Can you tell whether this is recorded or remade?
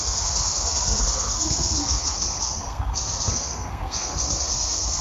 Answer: remade